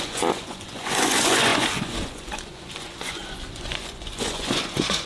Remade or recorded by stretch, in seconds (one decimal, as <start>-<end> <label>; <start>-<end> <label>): 0.0-5.1 remade